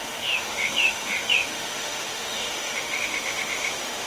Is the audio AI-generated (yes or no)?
yes